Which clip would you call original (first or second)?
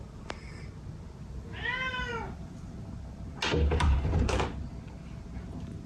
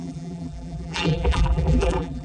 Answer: first